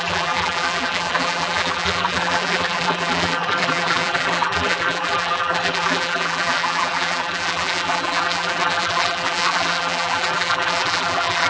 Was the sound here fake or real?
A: fake